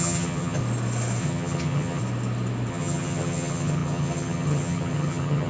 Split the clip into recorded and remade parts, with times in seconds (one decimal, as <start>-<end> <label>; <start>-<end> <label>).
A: 0.0-0.6 remade; 0.6-1.2 recorded; 1.2-2.0 remade; 2.0-2.7 recorded; 2.7-5.5 remade